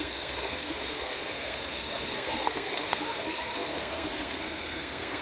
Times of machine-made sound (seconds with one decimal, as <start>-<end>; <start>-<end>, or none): 0.0-5.2